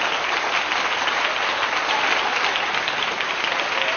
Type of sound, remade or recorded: recorded